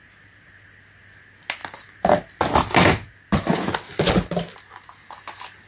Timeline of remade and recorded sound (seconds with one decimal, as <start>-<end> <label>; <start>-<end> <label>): 0.0-5.7 recorded